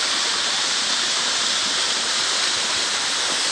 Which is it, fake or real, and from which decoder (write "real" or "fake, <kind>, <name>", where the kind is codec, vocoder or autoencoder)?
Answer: real